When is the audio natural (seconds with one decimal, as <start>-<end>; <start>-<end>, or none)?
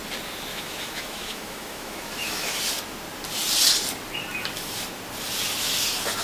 0.0-0.5; 2.6-6.2